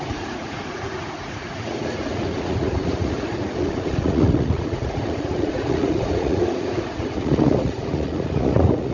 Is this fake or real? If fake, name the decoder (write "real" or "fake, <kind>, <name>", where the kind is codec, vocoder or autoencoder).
fake, vocoder, Vocos